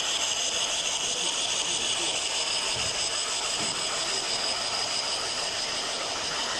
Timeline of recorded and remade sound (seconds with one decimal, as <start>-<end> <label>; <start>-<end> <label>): 0.0-6.6 recorded